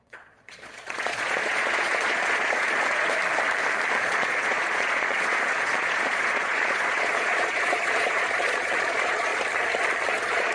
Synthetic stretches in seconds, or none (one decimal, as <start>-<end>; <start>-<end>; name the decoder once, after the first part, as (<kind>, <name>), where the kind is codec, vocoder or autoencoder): 0.0-3.2 (vocoder, Vocos); 4.0-9.3; 10.1-10.5